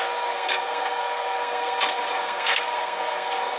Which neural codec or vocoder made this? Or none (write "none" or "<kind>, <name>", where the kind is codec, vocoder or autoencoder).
codec, SNAC